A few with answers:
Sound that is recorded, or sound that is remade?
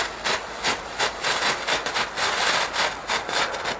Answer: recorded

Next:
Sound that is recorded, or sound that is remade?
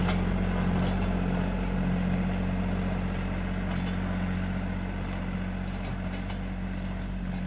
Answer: recorded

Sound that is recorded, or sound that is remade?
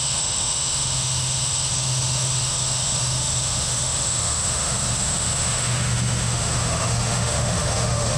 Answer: remade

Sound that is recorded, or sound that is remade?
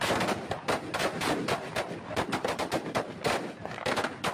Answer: recorded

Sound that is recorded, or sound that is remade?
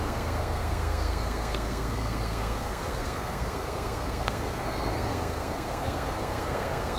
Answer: remade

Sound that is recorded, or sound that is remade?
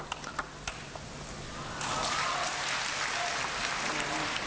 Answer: recorded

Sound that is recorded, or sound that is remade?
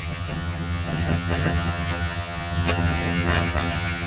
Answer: remade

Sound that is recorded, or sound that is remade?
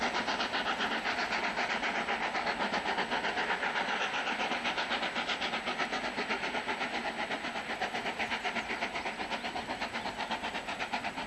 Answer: recorded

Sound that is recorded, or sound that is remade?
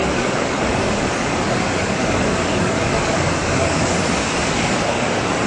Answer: remade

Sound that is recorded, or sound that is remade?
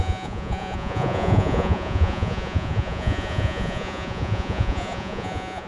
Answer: remade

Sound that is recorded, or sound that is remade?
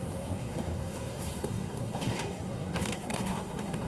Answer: remade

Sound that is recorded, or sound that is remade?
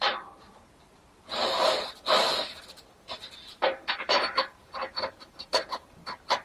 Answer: remade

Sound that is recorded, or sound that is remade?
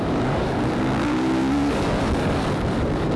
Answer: remade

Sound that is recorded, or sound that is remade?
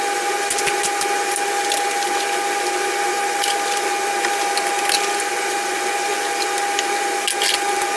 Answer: recorded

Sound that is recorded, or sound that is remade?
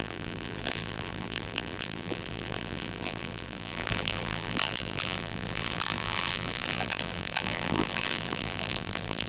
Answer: remade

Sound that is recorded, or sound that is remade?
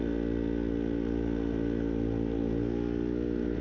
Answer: recorded